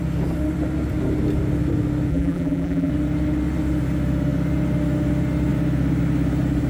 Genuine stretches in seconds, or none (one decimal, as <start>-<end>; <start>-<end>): 0.0-2.1; 2.9-6.7